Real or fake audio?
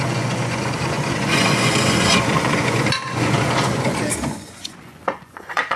fake